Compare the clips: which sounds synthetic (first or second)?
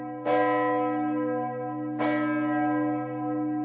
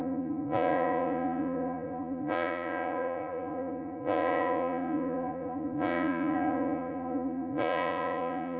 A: second